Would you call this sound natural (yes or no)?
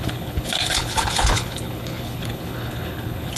no